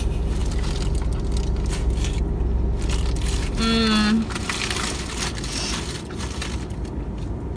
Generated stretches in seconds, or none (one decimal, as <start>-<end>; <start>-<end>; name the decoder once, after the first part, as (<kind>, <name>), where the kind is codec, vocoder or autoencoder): none